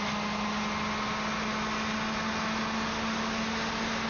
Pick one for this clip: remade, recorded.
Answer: recorded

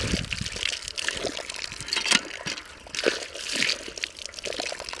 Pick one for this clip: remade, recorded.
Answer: recorded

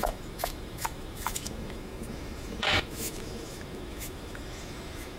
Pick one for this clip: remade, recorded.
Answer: remade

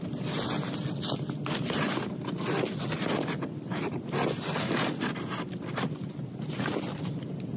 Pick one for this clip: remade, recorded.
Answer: recorded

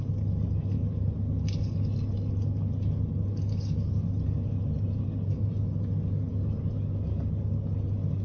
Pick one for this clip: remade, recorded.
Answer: recorded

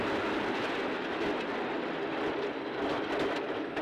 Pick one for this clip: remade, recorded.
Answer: recorded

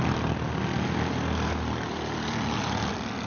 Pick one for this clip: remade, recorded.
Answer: recorded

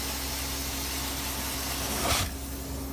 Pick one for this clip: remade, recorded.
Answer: recorded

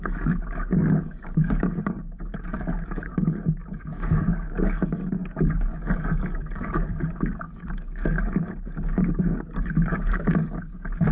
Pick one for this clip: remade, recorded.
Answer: remade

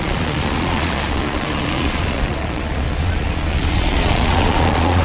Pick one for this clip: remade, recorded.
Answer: remade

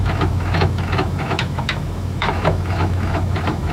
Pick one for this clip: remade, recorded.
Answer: remade